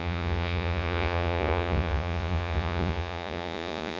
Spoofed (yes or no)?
yes